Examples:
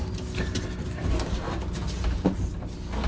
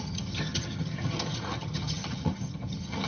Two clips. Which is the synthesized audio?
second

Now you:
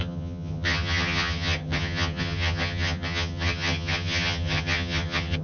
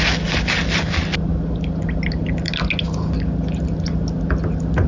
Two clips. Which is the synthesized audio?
first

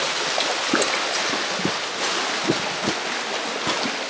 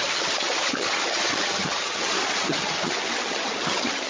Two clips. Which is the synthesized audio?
second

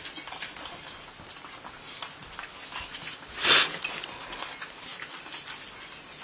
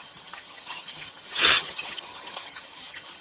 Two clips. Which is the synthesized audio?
second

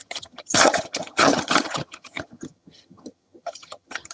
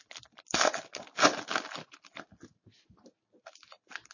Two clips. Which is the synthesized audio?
first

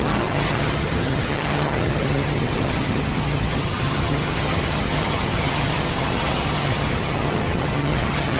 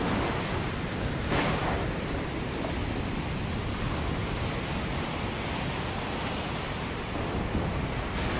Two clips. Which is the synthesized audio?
first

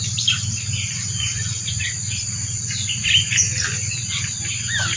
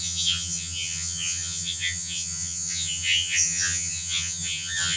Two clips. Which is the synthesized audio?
second